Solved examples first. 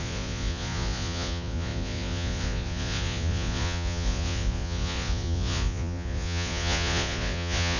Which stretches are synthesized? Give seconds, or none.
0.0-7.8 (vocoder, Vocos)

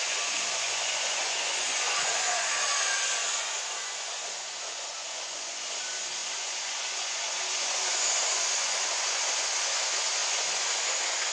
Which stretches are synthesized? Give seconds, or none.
0.0-11.3 (vocoder, Vocos)

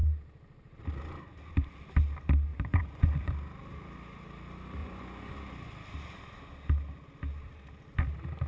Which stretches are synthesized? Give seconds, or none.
2.5-3.3 (vocoder, Vocos); 4.8-5.3

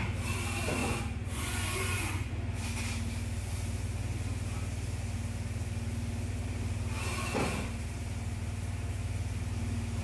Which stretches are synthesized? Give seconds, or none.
0.8-2.3 (vocoder, Vocos)

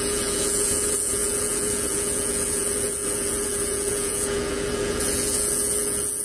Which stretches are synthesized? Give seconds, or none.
0.0-6.2 (vocoder, Vocos)

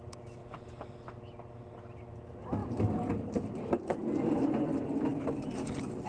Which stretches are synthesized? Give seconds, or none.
none

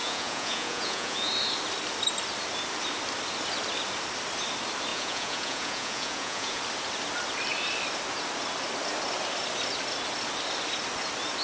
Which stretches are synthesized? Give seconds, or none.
0.0-1.3 (vocoder, Vocos); 4.9-6.6

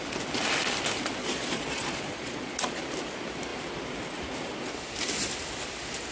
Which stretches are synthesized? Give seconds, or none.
1.2-2.8 (vocoder, Vocos)